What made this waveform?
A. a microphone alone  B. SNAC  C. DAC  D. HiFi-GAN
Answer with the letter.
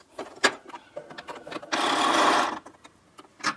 A